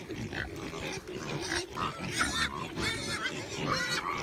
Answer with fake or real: real